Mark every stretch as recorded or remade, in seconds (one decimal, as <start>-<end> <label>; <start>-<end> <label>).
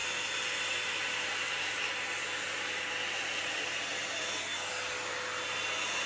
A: 0.0-1.9 remade; 1.9-6.1 recorded